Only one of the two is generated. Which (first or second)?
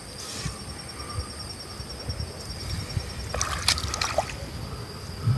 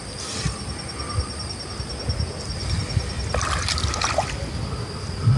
second